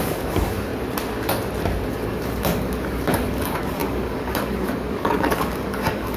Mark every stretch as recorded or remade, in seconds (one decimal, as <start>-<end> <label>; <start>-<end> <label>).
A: 0.0-0.7 remade; 0.7-1.9 recorded; 1.9-6.2 remade